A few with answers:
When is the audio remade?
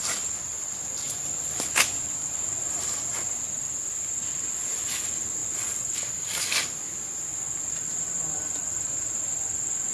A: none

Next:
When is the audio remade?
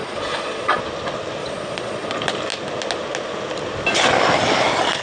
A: 0.0-0.8; 1.4-2.1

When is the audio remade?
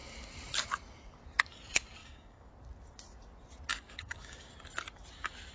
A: 2.0-2.5; 3.7-4.5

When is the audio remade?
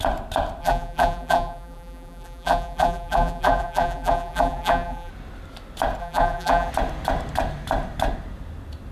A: 0.6-5.1; 6.0-6.7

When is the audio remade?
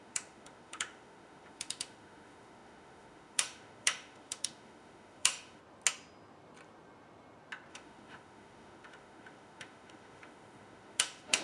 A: 0.0-5.6; 7.7-11.4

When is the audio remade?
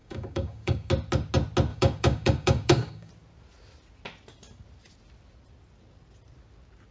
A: 0.0-0.9; 1.7-3.1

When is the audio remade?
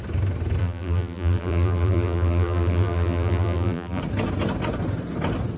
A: 0.6-4.0